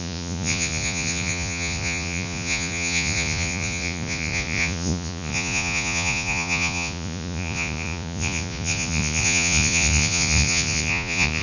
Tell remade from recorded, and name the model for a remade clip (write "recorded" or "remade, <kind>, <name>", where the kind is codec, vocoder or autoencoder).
remade, vocoder, Vocos